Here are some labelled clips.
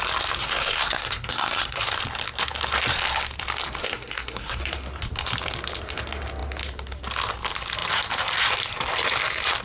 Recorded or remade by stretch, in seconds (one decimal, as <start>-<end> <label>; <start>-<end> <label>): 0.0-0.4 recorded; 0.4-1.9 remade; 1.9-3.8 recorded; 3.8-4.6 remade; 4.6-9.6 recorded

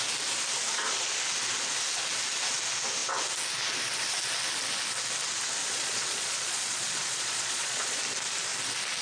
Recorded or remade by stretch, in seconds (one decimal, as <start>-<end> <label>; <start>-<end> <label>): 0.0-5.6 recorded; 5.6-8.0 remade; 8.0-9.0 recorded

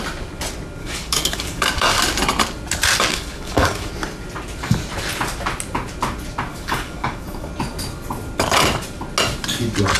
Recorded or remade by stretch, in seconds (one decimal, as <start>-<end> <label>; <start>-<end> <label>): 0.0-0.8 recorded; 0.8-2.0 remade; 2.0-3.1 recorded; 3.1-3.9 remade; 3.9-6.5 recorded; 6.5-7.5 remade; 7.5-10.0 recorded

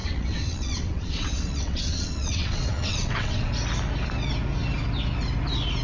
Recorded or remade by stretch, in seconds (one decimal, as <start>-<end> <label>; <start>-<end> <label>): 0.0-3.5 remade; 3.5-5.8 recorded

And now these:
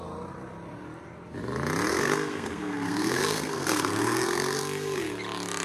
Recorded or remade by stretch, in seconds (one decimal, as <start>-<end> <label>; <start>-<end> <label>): 0.0-1.9 recorded; 1.9-5.0 remade; 5.0-5.6 recorded